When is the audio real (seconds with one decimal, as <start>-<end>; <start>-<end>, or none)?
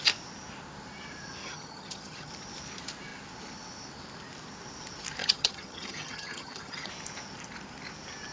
0.0-1.4; 2.3-5.2; 6.9-8.3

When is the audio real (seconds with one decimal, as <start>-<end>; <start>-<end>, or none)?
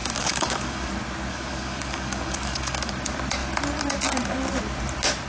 0.9-1.3; 2.9-5.3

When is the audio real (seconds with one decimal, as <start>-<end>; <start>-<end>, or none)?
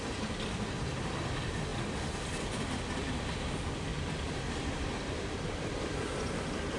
0.0-3.9; 5.7-6.8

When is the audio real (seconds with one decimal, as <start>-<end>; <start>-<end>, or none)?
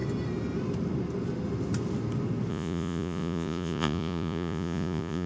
0.0-2.5